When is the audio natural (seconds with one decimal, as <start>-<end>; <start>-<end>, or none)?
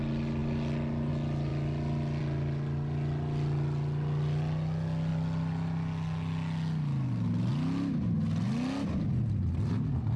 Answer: 0.0-10.2